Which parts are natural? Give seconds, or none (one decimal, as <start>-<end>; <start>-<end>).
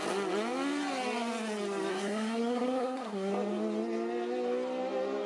0.0-1.9; 3.3-5.3